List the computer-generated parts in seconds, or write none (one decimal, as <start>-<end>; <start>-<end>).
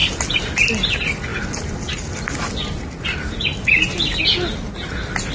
none